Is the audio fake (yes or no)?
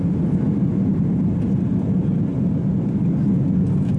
no